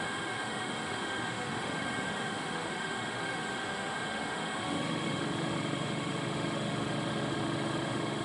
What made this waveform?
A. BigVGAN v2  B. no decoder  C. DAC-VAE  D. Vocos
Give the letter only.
C